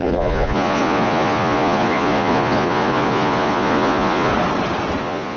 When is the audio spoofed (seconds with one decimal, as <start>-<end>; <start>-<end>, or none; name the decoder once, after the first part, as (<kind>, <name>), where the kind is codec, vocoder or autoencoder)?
0.0-4.3 (vocoder, Vocos); 5.0-5.4